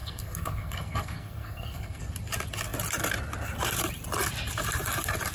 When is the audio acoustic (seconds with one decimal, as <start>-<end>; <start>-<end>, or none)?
2.0-5.3

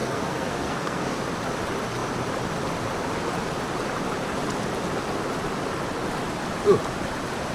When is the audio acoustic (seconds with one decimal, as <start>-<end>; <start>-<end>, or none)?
1.2-7.5

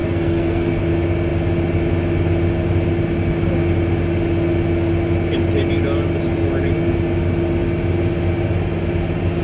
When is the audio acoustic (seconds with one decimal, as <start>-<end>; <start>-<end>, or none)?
0.8-9.4

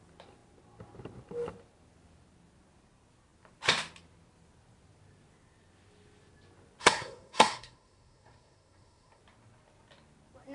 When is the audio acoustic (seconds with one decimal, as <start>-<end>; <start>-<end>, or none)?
0.0-6.8; 9.2-10.5

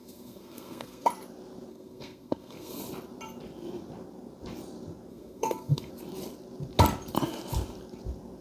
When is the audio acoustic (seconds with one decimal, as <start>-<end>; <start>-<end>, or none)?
1.1-1.7; 2.8-5.1; 5.9-8.4

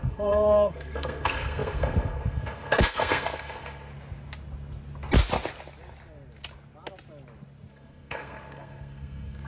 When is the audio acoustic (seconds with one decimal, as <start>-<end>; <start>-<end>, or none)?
3.9-7.7